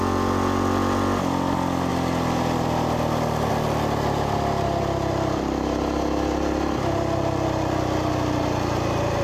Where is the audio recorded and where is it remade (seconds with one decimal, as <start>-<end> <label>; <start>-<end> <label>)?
0.0-9.2 recorded